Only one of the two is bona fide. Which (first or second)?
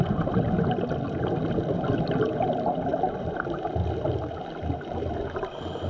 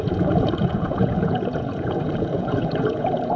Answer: first